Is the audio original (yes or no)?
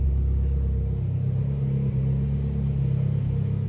yes